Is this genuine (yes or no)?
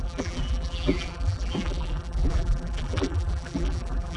no